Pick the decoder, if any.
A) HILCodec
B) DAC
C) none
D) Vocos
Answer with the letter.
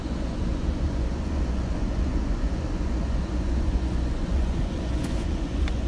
D